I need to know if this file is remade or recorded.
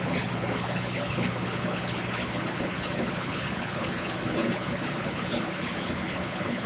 remade